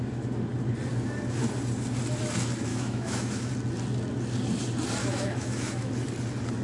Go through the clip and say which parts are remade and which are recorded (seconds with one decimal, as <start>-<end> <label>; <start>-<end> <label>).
0.0-2.7 recorded; 2.7-3.5 remade; 3.5-5.0 recorded; 5.0-5.9 remade; 5.9-6.6 recorded